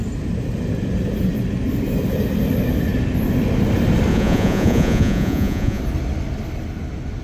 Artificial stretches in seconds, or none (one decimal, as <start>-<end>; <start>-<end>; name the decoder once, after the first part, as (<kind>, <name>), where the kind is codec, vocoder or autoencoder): 4.1-5.8 (vocoder, Vocos)